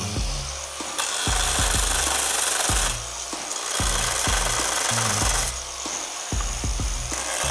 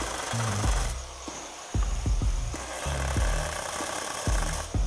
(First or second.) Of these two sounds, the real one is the first